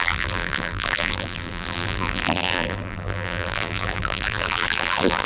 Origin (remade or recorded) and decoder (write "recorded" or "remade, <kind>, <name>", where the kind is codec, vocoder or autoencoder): remade, vocoder, BigVGAN v2